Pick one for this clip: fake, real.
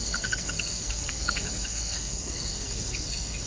fake